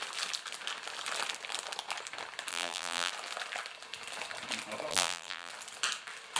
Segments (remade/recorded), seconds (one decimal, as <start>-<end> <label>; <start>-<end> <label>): 0.0-2.5 recorded; 2.5-3.1 remade; 3.1-4.9 recorded; 4.9-5.5 remade; 5.5-6.4 recorded